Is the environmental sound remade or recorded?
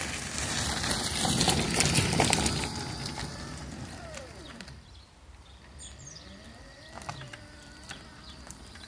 remade